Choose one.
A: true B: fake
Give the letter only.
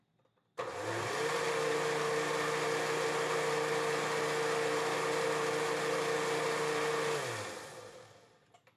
B